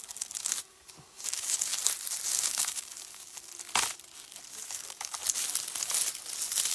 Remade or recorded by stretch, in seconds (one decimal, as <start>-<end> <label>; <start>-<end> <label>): 0.0-1.8 remade; 1.8-2.3 recorded; 2.3-3.5 remade; 3.5-4.5 recorded; 4.5-5.2 remade; 5.2-6.7 recorded